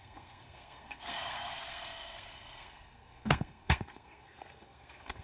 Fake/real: fake